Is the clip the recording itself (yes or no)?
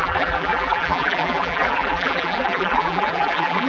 no